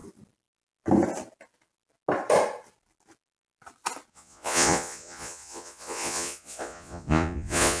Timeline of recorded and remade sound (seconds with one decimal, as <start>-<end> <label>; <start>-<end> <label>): 0.0-4.1 recorded; 4.1-7.8 remade